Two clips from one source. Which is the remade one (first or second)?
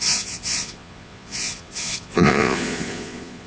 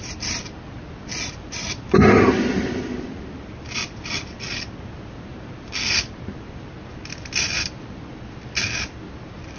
first